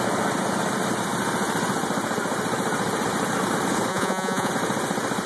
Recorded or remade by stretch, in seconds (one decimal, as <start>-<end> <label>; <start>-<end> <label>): 0.0-3.9 recorded; 3.9-4.5 remade; 4.5-5.3 recorded